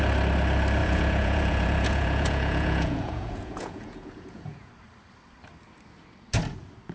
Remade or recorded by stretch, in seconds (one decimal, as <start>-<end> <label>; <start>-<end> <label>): 0.0-0.8 recorded; 0.8-4.7 remade; 4.7-6.9 recorded